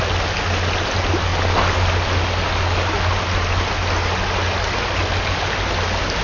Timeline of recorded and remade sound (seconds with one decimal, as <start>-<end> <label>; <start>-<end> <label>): 0.0-6.2 recorded